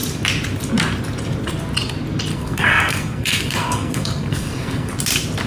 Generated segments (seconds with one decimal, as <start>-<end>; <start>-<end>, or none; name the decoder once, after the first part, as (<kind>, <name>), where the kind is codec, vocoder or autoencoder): 2.3-4.9 (codec, SNAC)